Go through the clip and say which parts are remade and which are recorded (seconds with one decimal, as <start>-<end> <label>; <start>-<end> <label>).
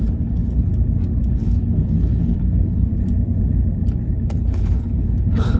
0.0-0.7 remade; 0.7-1.3 recorded; 1.3-2.9 remade; 2.9-4.1 recorded; 4.1-5.6 remade